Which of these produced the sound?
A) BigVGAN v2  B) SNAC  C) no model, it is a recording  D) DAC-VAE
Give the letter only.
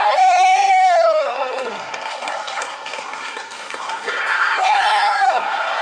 B